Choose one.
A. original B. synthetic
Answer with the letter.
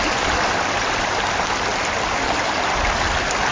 A